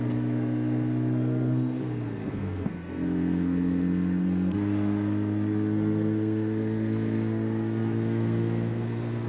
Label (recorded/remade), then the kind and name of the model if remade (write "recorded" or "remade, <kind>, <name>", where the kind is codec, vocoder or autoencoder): remade, codec, SNAC